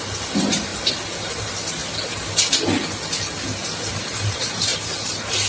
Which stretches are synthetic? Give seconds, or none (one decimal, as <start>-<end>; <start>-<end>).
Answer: 0.0-0.7; 1.2-1.8; 3.9-4.7